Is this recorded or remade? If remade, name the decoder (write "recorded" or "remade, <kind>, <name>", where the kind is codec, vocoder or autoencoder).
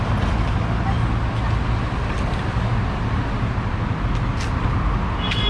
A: recorded